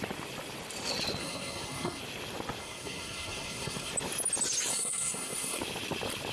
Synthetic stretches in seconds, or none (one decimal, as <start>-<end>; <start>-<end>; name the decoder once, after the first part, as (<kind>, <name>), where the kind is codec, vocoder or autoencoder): 1.2-2.0 (codec, SNAC); 2.6-3.9; 4.7-5.6